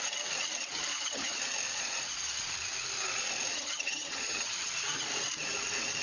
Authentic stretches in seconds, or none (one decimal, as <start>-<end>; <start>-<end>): 0.0-0.9; 1.4-3.5; 4.7-6.0